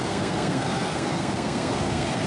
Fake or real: fake